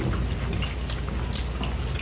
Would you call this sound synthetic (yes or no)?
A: no